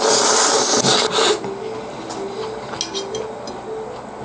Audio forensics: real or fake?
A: real